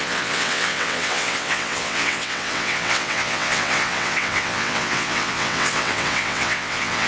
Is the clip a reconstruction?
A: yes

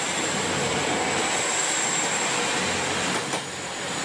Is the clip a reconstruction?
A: no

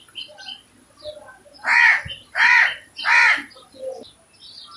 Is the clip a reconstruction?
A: no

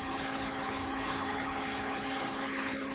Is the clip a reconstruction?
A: yes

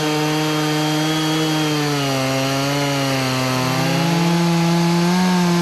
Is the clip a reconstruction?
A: no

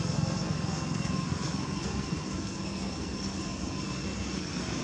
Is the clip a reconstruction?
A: yes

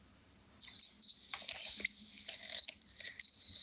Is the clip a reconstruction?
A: yes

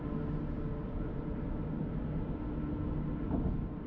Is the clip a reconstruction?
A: no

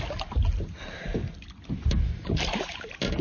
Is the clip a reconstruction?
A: no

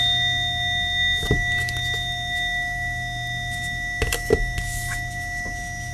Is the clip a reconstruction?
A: no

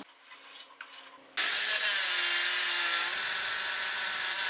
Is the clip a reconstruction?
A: no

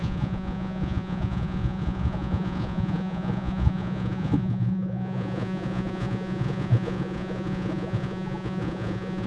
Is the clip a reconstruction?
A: yes